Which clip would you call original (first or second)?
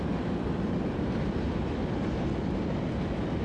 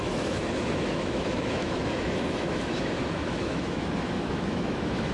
first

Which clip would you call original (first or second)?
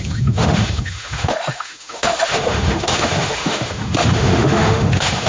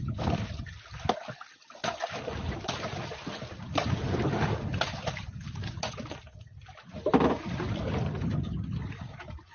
second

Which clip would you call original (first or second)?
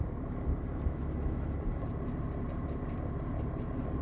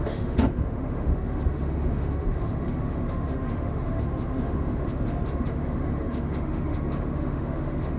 first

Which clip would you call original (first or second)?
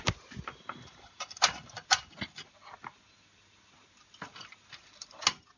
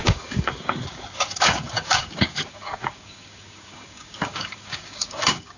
first